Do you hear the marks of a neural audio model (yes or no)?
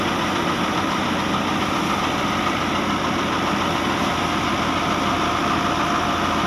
no